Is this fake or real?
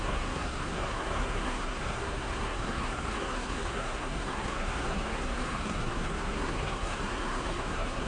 fake